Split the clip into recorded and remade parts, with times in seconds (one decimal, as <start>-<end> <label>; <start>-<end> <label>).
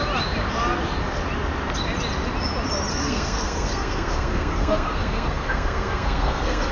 0.0-2.9 recorded; 2.9-6.7 remade